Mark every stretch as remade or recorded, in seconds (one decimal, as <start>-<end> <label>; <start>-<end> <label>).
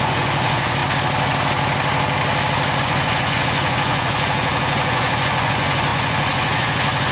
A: 0.0-0.8 remade; 0.8-2.8 recorded; 2.8-7.1 remade